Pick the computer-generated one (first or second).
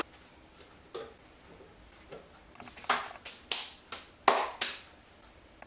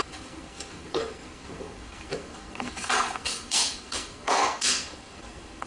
second